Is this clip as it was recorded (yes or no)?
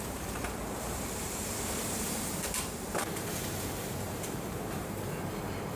no